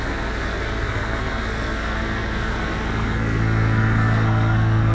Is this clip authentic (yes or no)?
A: no